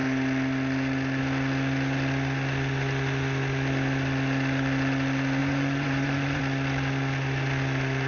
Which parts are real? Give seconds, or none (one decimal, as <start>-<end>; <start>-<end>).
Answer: 0.0-5.4; 6.4-8.1